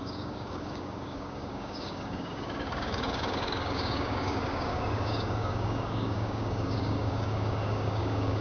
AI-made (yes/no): yes